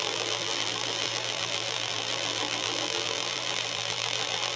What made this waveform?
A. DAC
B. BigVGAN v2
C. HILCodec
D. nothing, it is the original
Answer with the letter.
B